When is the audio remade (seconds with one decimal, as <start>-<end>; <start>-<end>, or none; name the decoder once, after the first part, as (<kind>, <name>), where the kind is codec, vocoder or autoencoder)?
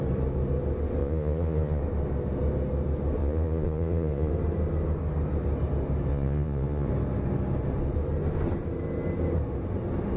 1.0-1.8 (vocoder, Vocos); 3.2-4.3; 6.1-6.9